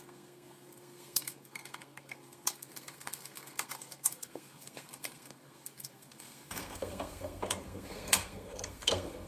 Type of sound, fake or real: fake